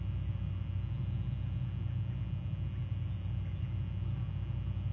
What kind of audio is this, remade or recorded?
recorded